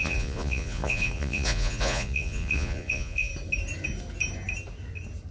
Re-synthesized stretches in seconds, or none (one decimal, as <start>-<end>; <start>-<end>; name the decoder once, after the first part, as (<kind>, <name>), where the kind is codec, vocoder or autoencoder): 0.0-3.3 (vocoder, Vocos)